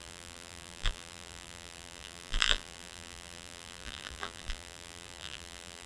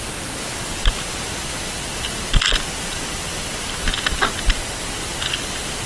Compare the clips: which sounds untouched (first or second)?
second